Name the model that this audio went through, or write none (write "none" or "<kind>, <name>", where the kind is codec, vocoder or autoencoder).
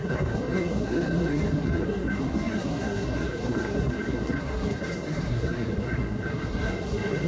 codec, SNAC